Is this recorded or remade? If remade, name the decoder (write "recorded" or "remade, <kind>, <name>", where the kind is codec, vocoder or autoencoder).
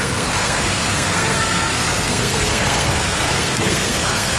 remade, codec, SNAC